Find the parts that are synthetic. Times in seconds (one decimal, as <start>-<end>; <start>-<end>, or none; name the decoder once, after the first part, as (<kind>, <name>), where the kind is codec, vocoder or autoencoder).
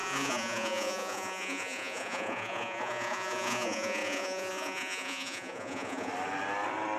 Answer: 0.0-6.1 (vocoder, Vocos)